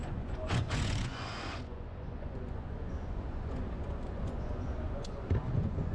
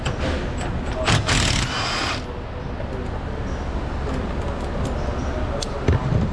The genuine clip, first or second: second